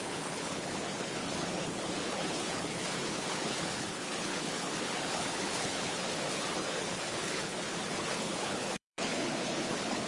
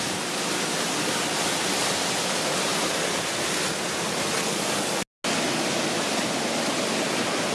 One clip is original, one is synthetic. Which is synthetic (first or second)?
first